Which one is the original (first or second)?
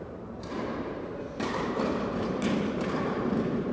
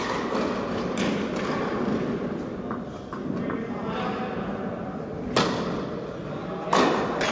second